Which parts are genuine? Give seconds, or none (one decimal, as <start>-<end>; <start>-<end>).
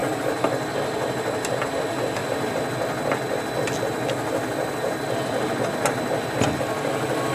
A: 0.0-7.3